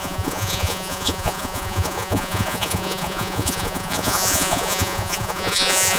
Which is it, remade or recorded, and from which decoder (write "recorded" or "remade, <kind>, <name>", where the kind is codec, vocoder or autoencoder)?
remade, vocoder, Vocos